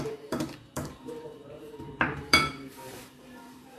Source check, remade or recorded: remade